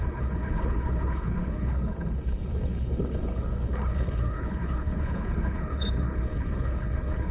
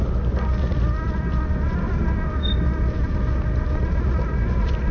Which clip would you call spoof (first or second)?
first